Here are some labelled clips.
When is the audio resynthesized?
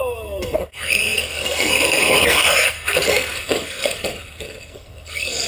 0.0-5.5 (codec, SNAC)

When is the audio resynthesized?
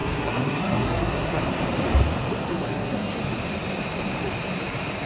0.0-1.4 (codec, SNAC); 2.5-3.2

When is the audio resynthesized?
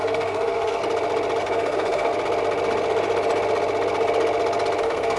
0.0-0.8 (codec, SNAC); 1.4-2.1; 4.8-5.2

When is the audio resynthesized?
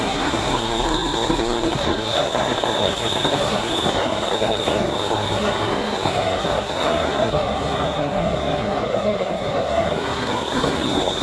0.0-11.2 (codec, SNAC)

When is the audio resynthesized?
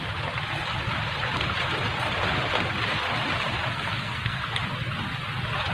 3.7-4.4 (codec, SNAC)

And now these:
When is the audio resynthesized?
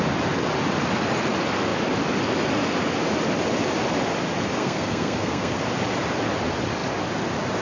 4.6-5.6 (codec, SNAC)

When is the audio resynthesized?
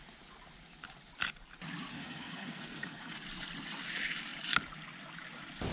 1.9-3.1 (codec, SNAC)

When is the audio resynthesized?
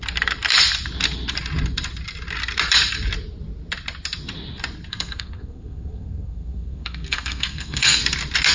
4.9-8.0 (codec, SNAC)